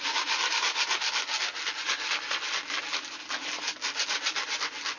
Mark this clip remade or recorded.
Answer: recorded